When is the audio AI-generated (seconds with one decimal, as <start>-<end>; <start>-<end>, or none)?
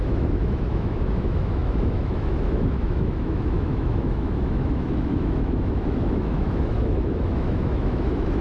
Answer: 0.0-8.4